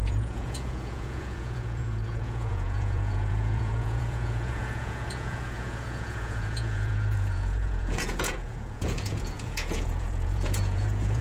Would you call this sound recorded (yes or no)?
no